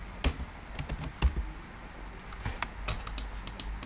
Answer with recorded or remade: recorded